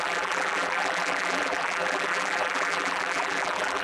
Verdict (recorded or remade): remade